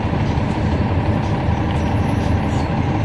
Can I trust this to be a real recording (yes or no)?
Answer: yes